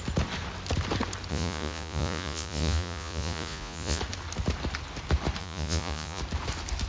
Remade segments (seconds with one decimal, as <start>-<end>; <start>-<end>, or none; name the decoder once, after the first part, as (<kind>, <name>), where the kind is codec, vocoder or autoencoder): 1.3-4.0 (vocoder, Vocos); 5.4-6.2